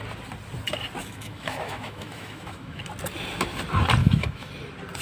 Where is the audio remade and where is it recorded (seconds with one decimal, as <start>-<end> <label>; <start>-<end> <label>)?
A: 0.0-1.0 recorded; 1.0-2.8 remade; 2.8-4.0 recorded; 4.0-4.5 remade; 4.5-5.0 recorded